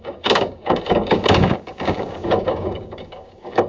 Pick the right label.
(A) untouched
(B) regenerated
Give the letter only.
B